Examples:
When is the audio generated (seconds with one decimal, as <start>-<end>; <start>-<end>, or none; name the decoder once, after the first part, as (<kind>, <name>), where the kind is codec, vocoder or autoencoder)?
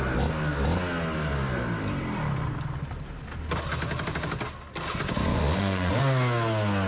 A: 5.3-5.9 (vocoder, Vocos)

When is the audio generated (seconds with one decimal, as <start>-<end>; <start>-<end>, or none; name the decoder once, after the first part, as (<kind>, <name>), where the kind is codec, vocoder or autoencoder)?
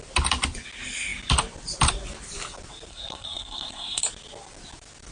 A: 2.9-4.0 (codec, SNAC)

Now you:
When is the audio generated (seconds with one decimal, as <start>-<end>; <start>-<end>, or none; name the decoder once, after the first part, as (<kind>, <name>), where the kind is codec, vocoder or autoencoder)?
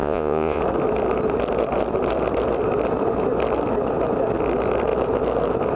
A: 0.0-0.6 (vocoder, Vocos)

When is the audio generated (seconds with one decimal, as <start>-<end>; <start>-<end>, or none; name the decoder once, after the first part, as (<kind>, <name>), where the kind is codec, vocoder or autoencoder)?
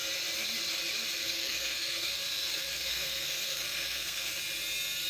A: 1.2-4.3 (codec, SNAC)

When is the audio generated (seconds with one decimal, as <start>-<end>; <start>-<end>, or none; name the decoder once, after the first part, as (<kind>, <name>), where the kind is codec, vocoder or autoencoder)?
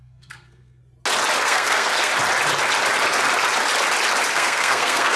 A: 0.0-0.8 (codec, SNAC); 1.4-2.1; 4.3-5.2